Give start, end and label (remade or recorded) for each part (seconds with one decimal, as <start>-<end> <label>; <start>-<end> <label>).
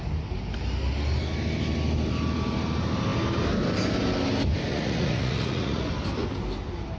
0.0-4.7 recorded; 4.7-5.9 remade; 5.9-7.0 recorded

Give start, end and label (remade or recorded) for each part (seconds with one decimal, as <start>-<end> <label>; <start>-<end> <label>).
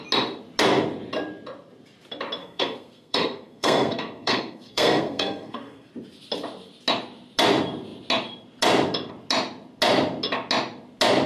0.0-2.4 recorded; 2.4-5.9 remade; 5.9-11.3 recorded